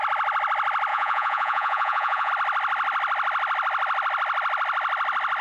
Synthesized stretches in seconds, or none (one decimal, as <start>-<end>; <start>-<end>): 0.9-2.3